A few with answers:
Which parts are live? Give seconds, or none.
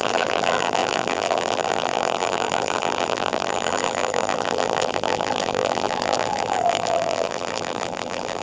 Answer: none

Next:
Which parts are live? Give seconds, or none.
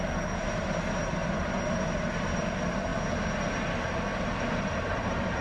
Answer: 0.0-4.1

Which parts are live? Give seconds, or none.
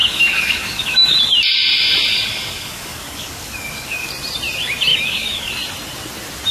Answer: 1.2-2.1; 4.1-4.9; 5.5-6.5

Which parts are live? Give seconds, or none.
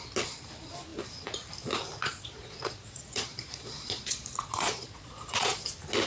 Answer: 0.0-2.0; 5.6-6.1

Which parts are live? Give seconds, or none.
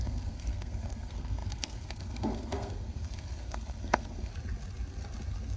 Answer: 4.3-5.6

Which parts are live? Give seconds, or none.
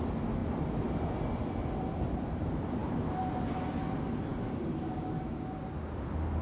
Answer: 0.0-4.3; 5.6-6.4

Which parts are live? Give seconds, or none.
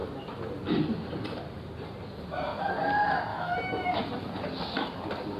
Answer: 0.0-3.3; 4.0-5.4